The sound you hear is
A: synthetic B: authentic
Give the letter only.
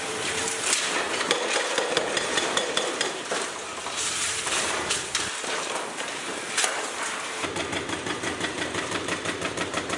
A